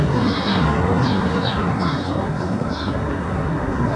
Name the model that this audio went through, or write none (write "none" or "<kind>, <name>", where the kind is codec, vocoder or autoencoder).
codec, SNAC